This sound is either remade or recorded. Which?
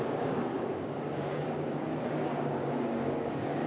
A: remade